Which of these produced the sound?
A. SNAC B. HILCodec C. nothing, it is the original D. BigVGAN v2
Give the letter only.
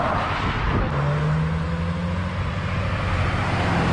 C